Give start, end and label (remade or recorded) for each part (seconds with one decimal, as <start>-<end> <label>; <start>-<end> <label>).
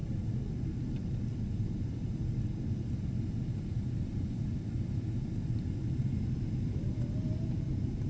0.0-3.3 remade; 3.3-4.1 recorded; 4.1-4.8 remade; 4.8-8.1 recorded